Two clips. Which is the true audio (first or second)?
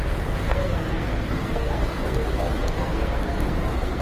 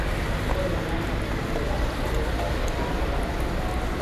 second